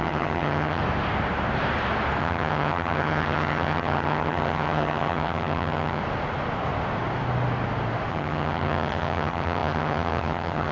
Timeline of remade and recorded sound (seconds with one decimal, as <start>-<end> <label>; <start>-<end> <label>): 0.0-0.8 remade; 0.8-2.2 recorded; 2.2-6.0 remade; 6.0-8.1 recorded; 8.1-10.7 remade